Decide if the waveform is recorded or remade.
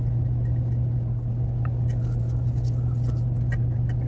recorded